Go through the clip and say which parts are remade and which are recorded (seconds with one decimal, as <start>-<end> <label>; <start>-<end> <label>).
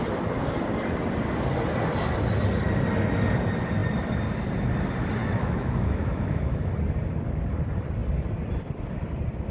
0.0-5.2 recorded; 5.2-6.7 remade; 6.7-9.5 recorded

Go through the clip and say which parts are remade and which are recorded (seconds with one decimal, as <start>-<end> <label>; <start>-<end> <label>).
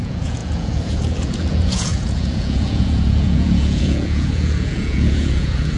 0.0-5.8 remade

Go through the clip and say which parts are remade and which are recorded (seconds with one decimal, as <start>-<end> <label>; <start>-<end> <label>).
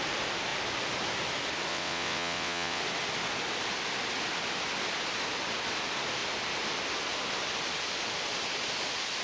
0.0-1.7 recorded; 1.7-2.8 remade; 2.8-9.2 recorded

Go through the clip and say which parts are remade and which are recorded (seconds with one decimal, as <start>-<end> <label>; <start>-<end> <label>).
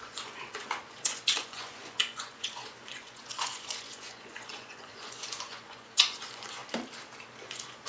0.0-6.6 remade; 6.6-7.4 recorded; 7.4-7.9 remade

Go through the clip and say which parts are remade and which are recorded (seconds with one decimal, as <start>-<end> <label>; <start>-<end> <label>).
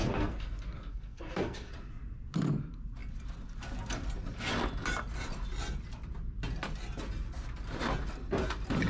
0.0-0.5 remade; 0.5-0.9 recorded; 0.9-1.7 remade; 1.7-8.9 recorded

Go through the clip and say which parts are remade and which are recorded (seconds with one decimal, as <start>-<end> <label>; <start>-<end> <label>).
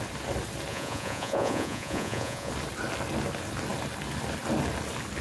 0.0-0.7 recorded; 0.7-2.5 remade; 2.5-5.2 recorded